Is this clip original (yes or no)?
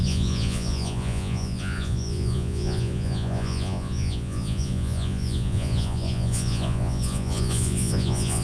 no